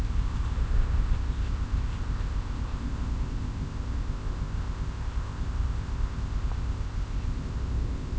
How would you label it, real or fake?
fake